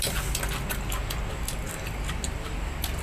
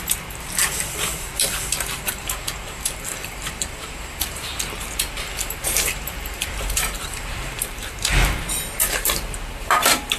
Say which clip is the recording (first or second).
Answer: first